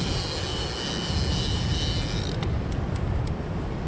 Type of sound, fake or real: real